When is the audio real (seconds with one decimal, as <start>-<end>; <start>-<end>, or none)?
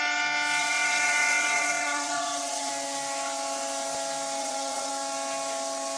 0.0-0.6; 2.7-4.4; 4.9-6.0